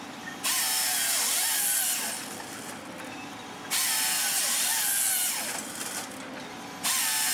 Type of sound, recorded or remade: recorded